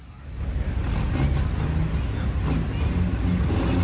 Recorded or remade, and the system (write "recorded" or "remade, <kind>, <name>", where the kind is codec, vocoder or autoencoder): recorded